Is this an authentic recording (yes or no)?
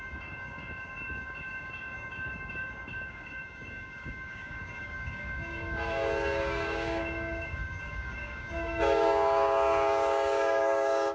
no